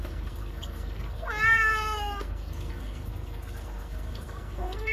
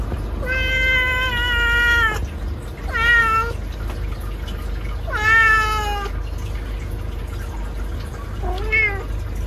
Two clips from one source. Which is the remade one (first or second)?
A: first